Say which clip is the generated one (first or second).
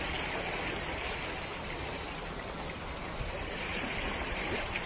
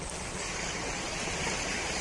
first